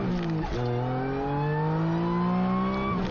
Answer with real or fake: real